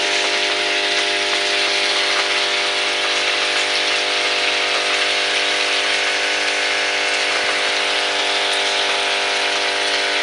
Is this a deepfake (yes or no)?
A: no